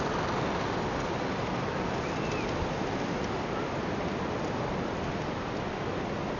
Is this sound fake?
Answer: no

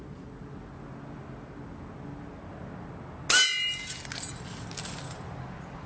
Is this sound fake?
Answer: no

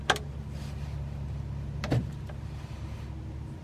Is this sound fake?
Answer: no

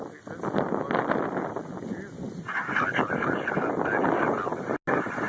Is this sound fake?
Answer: no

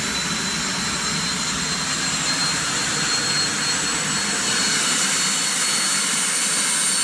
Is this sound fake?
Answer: no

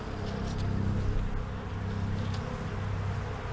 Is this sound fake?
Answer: no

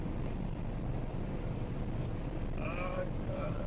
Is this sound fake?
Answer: yes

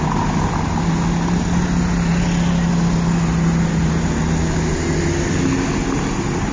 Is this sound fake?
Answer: no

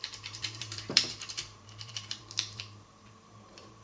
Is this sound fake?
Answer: yes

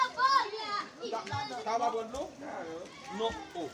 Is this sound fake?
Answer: no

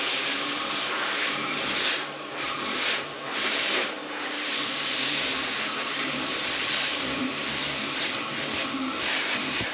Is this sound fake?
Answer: yes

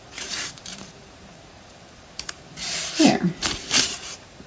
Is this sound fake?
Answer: yes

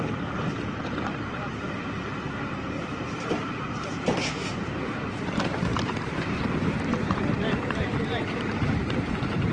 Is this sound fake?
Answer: yes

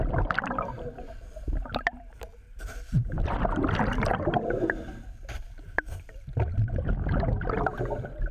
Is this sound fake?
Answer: no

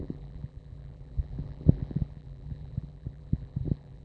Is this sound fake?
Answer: yes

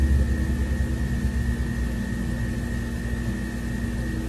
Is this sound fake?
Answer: no